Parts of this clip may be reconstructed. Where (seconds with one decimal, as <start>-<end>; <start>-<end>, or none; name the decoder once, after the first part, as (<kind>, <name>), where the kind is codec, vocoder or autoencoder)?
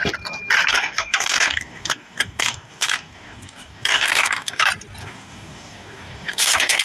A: 0.7-4.6 (codec, DAC); 5.0-6.8